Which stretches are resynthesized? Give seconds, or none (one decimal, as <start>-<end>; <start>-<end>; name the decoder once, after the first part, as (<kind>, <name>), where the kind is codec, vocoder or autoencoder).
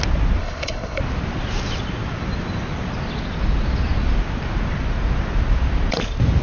0.4-1.0 (codec, HILCodec)